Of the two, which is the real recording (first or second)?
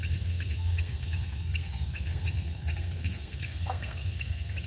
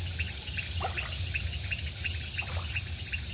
second